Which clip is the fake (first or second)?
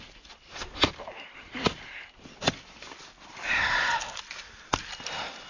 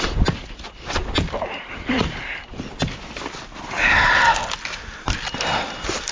first